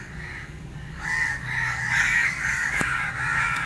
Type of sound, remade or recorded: remade